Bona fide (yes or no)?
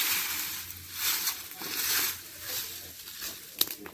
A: yes